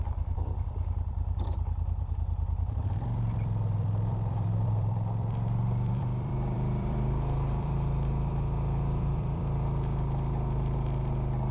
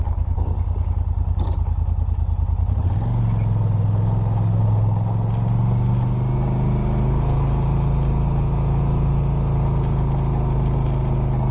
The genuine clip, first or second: second